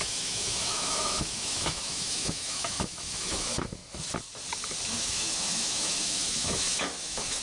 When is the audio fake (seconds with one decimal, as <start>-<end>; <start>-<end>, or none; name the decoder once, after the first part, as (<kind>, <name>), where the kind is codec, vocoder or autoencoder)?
0.0-3.8 (autoencoder, DAC-VAE); 4.9-7.4